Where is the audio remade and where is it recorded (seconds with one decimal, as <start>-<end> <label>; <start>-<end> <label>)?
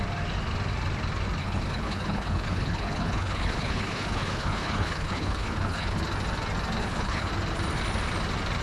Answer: 0.0-1.4 recorded; 1.4-6.0 remade; 6.0-6.8 recorded; 6.8-7.3 remade; 7.3-8.6 recorded